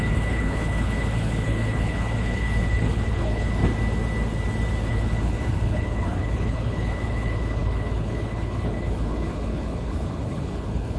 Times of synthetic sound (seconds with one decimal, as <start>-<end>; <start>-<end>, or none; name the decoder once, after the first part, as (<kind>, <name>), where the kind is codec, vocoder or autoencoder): 0.0-3.6 (codec, HILCodec); 4.9-11.0